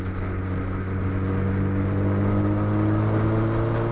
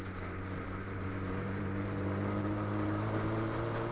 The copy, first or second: second